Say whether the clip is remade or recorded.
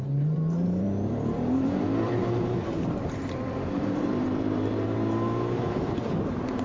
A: remade